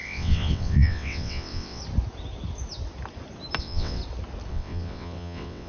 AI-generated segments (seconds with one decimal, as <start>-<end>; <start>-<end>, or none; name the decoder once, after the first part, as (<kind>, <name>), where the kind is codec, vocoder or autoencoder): 0.0-1.8 (vocoder, WaveNeXt); 3.6-4.0; 4.5-5.7